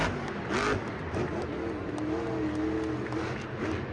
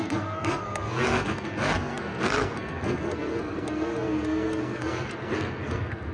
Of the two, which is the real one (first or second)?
first